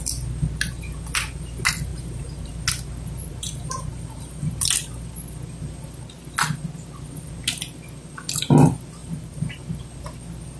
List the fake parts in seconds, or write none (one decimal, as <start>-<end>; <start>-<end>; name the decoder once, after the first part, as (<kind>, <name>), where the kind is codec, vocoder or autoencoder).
1.9-2.5 (vocoder, BigVGAN v2); 3.3-4.6; 9.0-9.8